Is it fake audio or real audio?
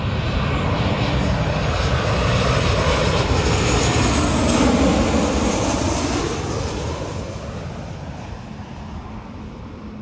real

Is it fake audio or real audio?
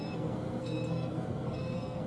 fake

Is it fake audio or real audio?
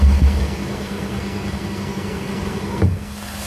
fake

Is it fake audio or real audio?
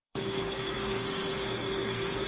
fake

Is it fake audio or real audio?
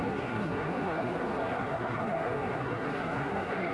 fake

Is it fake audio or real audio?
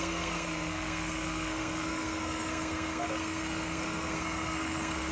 fake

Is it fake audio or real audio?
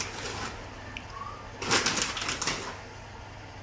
real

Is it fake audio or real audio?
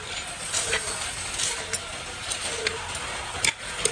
real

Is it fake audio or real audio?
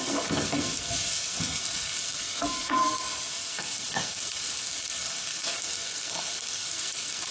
fake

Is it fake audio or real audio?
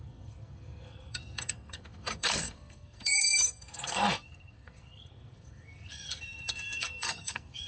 fake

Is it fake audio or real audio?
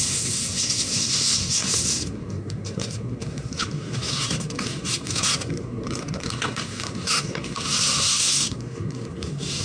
fake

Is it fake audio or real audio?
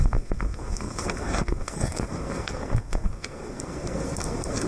fake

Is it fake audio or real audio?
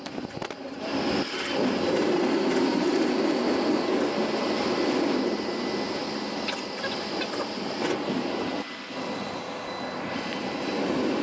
real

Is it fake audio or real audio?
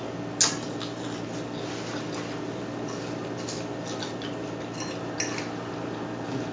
real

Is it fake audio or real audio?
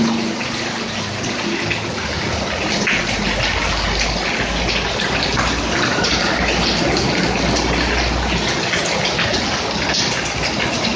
real